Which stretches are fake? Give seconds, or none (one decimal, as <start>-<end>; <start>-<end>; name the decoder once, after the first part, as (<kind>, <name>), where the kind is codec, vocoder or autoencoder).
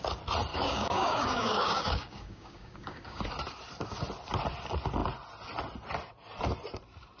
0.5-3.2 (codec, DAC)